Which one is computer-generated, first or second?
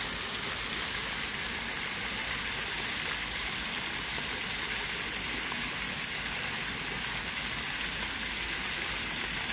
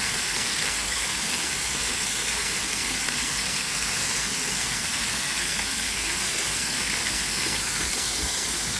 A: second